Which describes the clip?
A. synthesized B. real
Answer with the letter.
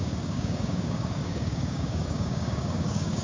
A